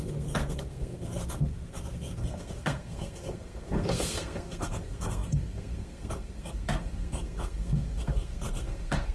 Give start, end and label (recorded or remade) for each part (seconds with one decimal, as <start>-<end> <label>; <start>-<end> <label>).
0.0-9.1 remade